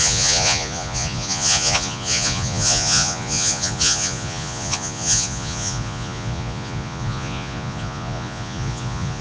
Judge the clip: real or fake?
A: fake